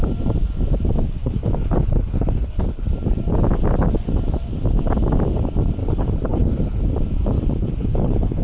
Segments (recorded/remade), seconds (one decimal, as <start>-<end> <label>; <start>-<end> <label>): 0.0-1.2 recorded; 1.2-2.9 remade; 2.9-5.8 recorded; 5.8-6.8 remade; 6.8-7.6 recorded; 7.6-8.4 remade